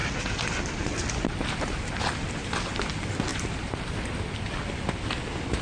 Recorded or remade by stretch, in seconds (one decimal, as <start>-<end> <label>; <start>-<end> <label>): 0.0-3.3 recorded; 3.3-3.9 remade; 3.9-5.6 recorded